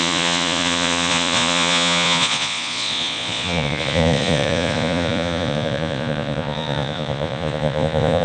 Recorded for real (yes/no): no